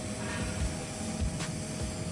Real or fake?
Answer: real